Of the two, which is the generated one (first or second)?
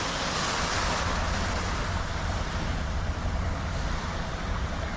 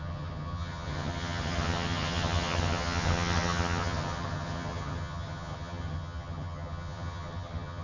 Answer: second